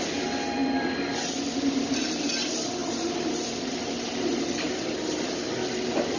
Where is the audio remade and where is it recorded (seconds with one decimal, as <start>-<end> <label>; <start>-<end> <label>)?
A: 0.0-6.2 recorded